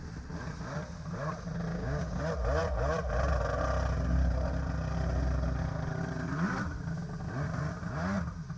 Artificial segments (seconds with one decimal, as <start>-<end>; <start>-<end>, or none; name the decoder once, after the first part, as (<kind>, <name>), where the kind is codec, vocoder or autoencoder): 1.7-2.2 (codec, DAC)